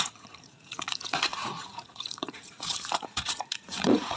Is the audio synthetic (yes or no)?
yes